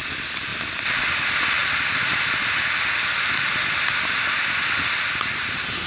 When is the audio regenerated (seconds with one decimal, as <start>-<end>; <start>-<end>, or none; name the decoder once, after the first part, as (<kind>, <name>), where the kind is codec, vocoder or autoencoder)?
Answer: none